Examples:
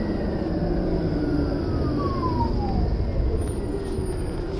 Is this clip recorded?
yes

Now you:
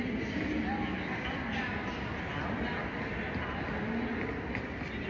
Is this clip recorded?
yes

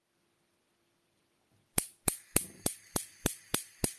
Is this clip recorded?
yes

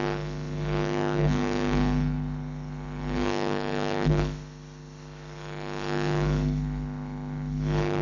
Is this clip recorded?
no